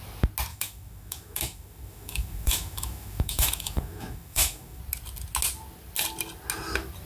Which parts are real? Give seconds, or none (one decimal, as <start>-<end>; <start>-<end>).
0.0-0.5; 4.8-7.1